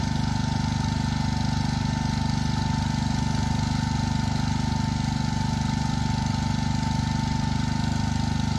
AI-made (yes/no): no